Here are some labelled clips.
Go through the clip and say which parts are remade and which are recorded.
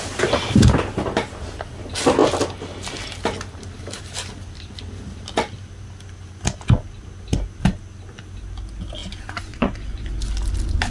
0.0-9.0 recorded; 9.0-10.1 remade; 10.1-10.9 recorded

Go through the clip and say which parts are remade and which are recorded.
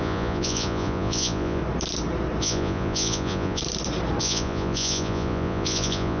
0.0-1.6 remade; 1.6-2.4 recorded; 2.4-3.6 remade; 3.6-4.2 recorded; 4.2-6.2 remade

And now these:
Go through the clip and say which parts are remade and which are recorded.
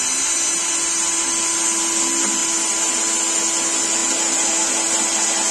0.0-5.5 recorded